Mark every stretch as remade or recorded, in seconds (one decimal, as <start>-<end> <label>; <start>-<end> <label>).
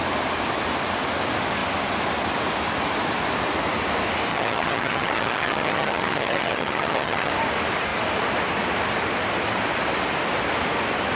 0.0-4.3 recorded; 4.3-7.3 remade; 7.3-11.2 recorded